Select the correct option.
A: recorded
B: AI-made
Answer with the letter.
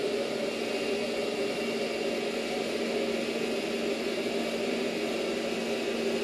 A